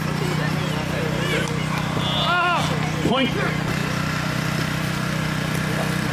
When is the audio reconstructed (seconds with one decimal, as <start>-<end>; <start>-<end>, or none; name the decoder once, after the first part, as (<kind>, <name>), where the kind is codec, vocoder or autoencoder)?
none